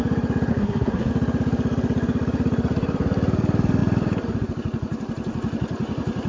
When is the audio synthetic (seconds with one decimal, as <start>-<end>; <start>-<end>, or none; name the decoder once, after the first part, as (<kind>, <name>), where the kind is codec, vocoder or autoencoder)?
0.5-1.1 (codec, SNAC)